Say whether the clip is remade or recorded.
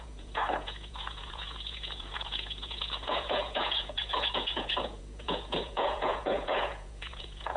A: remade